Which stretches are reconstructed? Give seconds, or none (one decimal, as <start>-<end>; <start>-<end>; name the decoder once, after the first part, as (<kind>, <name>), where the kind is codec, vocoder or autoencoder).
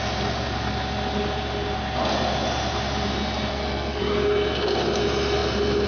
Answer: 3.5-4.0 (codec, SNAC)